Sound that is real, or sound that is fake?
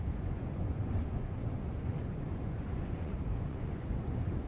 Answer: fake